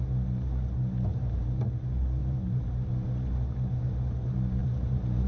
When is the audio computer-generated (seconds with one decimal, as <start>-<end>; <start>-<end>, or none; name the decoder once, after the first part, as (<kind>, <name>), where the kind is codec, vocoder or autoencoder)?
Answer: 1.1-1.6 (vocoder, BigVGAN v2); 2.2-2.9; 4.6-5.3